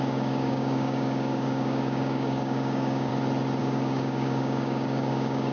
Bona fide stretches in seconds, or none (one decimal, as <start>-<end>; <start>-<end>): 3.1-3.6